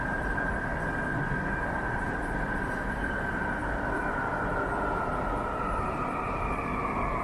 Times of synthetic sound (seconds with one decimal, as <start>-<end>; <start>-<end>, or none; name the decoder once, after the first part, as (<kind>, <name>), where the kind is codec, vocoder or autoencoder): 0.0-0.7 (vocoder, BigVGAN v2); 1.7-3.6; 6.2-7.2